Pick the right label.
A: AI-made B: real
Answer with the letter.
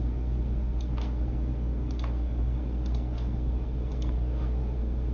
A